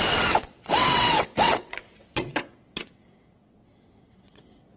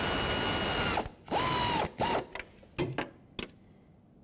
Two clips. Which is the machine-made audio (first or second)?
first